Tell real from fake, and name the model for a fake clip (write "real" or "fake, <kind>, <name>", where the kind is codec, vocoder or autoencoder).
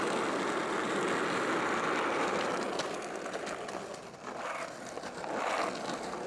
real